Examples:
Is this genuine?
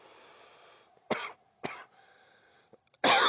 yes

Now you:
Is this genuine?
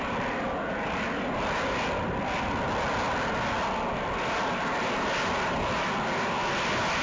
yes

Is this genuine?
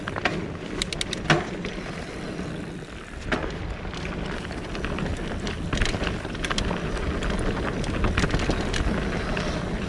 yes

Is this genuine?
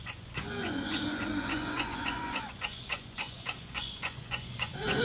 no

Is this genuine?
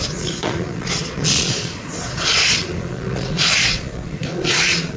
no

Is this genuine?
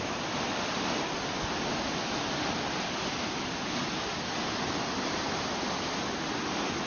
yes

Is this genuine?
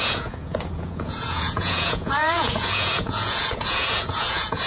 no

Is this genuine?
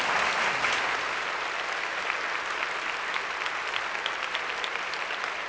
yes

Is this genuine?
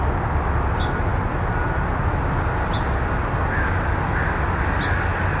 yes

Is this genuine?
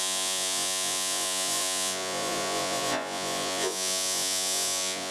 no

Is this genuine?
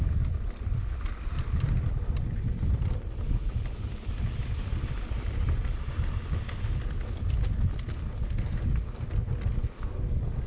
yes